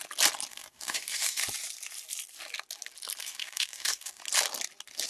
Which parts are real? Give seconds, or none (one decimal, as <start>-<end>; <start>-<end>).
0.0-0.5; 1.4-3.2; 4.2-5.1